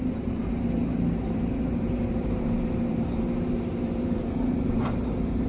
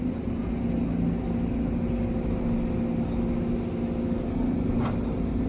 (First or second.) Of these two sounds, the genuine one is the second